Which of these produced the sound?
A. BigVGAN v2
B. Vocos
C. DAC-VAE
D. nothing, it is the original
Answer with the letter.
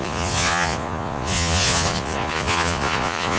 B